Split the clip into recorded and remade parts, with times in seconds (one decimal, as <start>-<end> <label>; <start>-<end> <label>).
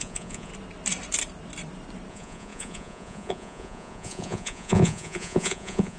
0.0-0.5 remade; 0.5-2.1 recorded; 2.1-6.0 remade